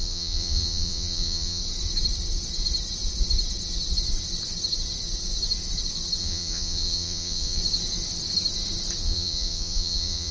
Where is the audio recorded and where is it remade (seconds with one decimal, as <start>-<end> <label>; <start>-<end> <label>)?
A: 0.0-1.6 remade; 1.6-6.2 recorded; 6.2-7.6 remade; 7.6-9.0 recorded; 9.0-10.3 remade

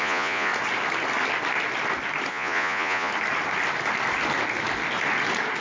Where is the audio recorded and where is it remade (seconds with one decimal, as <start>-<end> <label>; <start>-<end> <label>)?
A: 0.0-0.5 remade; 0.5-2.3 recorded; 2.3-3.1 remade; 3.1-5.6 recorded

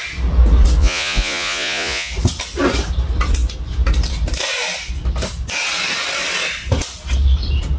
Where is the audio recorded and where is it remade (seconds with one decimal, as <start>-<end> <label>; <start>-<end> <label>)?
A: 0.0-0.8 recorded; 0.8-2.1 remade; 2.1-7.8 recorded

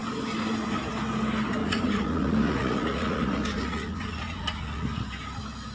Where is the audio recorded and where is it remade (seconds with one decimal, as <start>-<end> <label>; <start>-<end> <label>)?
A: 0.0-1.6 recorded; 1.6-5.0 remade; 5.0-5.7 recorded

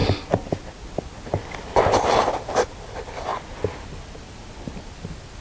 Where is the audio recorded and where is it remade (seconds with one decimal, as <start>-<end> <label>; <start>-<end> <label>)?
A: 0.0-5.4 recorded